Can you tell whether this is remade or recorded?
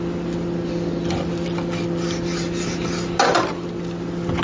recorded